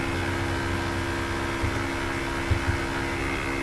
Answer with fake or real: real